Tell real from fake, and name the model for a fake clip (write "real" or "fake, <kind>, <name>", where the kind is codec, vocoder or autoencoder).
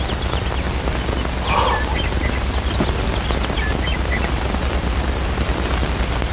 real